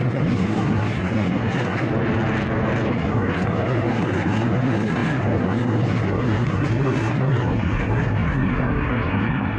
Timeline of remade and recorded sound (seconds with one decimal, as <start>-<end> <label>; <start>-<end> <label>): 0.0-1.9 remade; 1.9-2.9 recorded; 2.9-9.6 remade